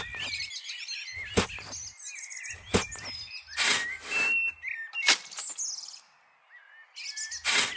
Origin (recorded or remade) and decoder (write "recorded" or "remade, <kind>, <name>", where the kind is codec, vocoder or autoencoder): recorded